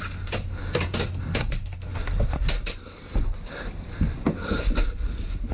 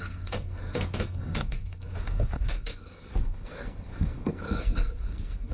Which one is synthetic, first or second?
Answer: second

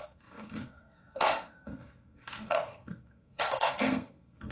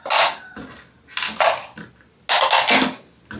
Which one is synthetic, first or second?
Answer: first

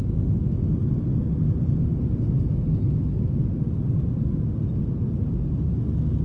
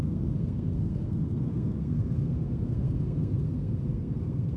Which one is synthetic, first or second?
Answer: second